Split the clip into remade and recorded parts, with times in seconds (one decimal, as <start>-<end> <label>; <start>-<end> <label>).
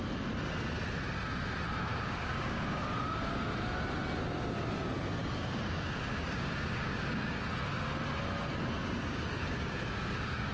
0.0-1.9 recorded; 1.9-3.0 remade; 3.0-5.2 recorded; 5.2-7.4 remade; 7.4-9.0 recorded; 9.0-10.5 remade